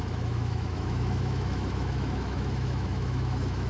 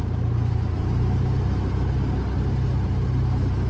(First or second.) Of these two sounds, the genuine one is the second